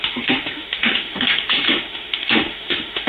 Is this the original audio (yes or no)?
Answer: no